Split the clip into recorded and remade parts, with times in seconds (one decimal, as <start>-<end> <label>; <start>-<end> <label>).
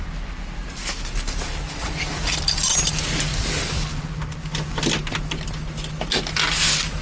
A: 0.0-7.0 recorded